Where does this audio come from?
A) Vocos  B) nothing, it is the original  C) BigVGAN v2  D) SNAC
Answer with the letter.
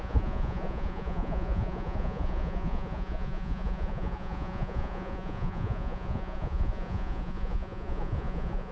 A